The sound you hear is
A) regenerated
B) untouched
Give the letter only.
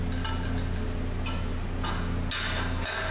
B